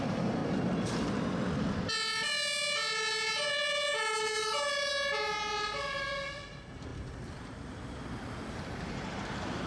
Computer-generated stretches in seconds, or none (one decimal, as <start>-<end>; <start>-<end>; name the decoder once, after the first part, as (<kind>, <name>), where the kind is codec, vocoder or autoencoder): 0.0-0.4 (vocoder, BigVGAN v2); 4.2-4.9; 5.6-9.7